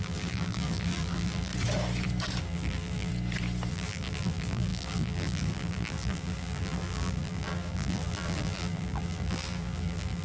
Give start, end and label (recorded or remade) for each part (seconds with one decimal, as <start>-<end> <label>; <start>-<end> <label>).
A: 0.0-1.5 remade; 1.5-2.4 recorded; 2.4-3.1 remade; 3.1-3.7 recorded; 3.7-10.2 remade